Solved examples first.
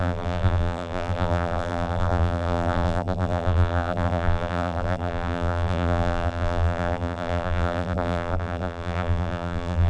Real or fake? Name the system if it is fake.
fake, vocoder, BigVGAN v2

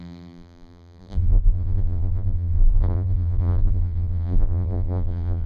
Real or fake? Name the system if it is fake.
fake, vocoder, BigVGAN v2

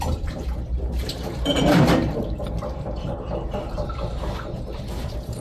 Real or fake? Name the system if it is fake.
fake, vocoder, BigVGAN v2